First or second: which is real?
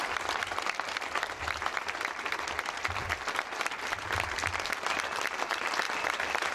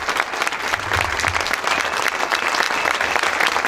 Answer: second